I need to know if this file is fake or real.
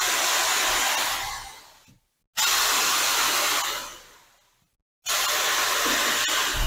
real